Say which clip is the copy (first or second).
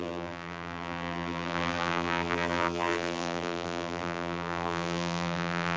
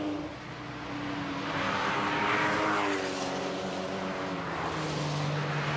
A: first